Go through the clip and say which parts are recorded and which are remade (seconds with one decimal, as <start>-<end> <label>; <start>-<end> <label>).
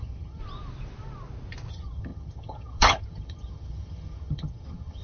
0.0-0.4 remade; 0.4-1.7 recorded; 1.7-5.0 remade